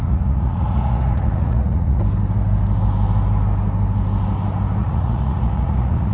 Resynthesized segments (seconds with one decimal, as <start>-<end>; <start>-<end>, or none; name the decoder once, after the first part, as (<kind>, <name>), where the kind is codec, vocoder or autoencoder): 0.0-2.0 (vocoder, Vocos); 4.8-6.1